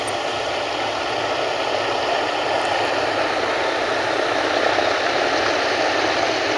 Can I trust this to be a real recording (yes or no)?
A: yes